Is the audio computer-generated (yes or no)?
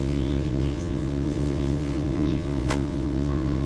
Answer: yes